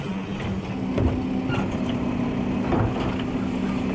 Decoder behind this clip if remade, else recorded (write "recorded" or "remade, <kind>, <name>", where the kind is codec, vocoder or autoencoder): recorded